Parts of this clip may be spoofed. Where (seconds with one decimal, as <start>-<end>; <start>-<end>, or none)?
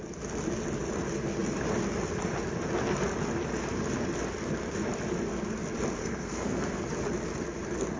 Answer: 6.0-6.8